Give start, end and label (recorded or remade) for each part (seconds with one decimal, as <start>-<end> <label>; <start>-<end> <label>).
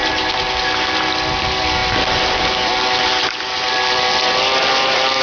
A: 0.0-5.2 recorded